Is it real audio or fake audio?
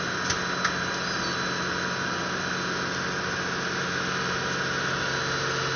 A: real